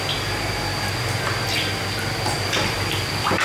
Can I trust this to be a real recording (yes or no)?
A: yes